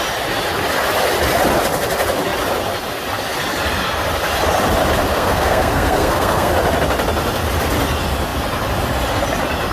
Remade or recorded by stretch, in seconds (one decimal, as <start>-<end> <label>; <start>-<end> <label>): 0.0-5.1 recorded; 5.1-6.5 remade; 6.5-9.7 recorded